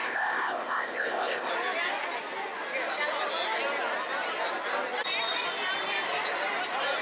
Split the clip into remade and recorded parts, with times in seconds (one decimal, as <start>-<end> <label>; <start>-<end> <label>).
0.0-1.5 remade; 1.5-7.0 recorded